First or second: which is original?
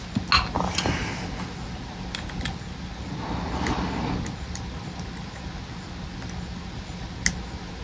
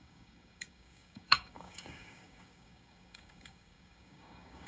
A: first